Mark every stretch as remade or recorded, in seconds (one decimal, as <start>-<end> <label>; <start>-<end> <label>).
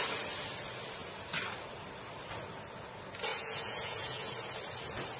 0.0-3.3 recorded; 3.3-4.3 remade; 4.3-5.2 recorded